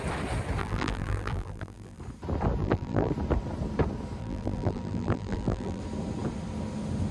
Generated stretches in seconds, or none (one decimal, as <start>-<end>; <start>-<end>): 0.6-2.0; 2.6-3.1; 4.2-5.8